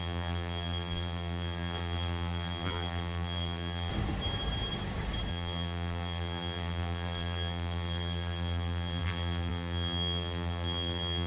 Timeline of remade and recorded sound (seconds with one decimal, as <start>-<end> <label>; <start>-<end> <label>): 0.0-3.9 remade; 3.9-5.3 recorded; 5.3-11.3 remade